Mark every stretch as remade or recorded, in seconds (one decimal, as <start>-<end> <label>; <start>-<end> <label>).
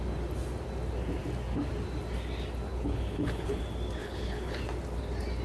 0.0-2.7 recorded; 2.7-3.6 remade; 3.6-4.0 recorded; 4.0-4.6 remade; 4.6-5.4 recorded